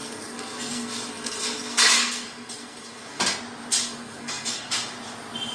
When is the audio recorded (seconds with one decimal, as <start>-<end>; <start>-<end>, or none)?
3.2-3.8; 4.7-5.5